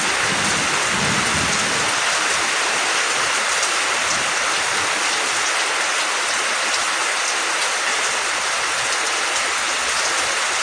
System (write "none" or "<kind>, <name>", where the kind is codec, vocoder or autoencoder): none